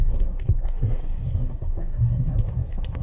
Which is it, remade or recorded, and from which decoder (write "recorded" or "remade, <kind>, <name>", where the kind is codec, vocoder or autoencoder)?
remade, codec, SNAC